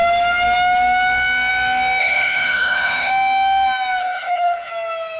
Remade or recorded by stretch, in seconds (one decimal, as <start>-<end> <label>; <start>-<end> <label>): 0.0-2.0 recorded; 2.0-3.1 remade; 3.1-4.0 recorded; 4.0-4.7 remade; 4.7-5.2 recorded